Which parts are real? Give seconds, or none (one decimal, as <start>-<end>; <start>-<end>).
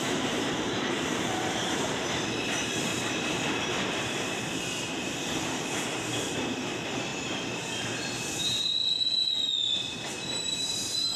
2.9-3.7; 8.8-9.9